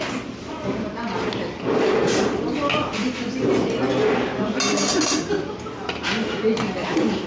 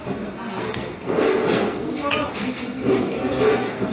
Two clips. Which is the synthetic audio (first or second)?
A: second